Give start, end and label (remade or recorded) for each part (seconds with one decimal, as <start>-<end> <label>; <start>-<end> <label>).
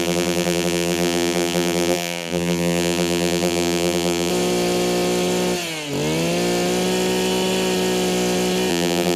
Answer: 0.0-4.3 remade; 4.3-8.7 recorded; 8.7-9.2 remade